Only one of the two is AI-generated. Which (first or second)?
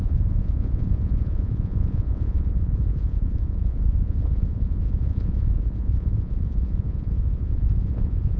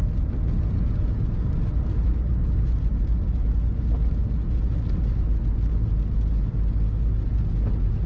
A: first